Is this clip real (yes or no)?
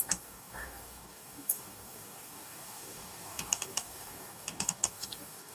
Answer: no